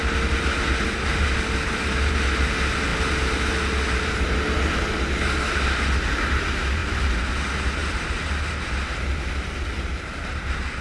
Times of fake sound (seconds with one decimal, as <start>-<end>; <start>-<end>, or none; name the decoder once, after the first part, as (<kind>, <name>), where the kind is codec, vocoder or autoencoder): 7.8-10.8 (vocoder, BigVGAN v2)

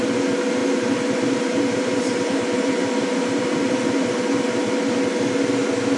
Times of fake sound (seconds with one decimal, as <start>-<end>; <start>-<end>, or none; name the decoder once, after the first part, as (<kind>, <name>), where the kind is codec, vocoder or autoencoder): 0.6-4.2 (vocoder, BigVGAN v2)

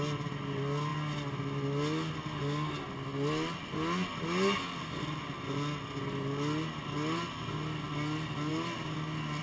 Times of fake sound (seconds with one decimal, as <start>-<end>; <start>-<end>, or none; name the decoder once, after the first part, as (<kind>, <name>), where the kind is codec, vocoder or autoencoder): none